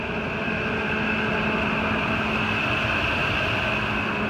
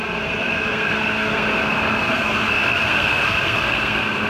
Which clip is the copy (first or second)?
second